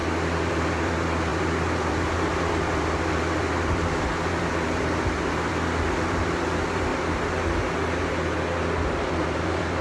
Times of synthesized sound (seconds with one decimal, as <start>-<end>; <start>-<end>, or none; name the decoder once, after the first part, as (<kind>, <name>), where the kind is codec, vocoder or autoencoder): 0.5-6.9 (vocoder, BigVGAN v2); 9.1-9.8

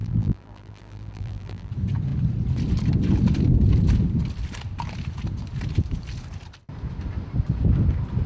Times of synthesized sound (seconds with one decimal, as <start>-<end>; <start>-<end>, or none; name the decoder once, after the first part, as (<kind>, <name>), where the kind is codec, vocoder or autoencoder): 0.0-1.7 (vocoder, BigVGAN v2)

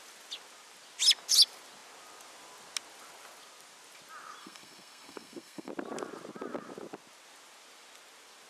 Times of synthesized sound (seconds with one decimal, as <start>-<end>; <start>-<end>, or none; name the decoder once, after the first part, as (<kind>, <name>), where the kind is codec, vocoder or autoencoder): 4.4-5.7 (codec, SNAC)

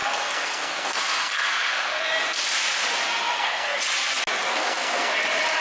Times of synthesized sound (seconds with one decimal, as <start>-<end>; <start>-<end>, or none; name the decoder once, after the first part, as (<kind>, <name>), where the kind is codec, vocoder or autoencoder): 0.0-2.0 (codec, SNAC); 3.2-3.8; 4.5-5.1

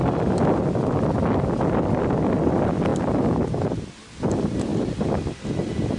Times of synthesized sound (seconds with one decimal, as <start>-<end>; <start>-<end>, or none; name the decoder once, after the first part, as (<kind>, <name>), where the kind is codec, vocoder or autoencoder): none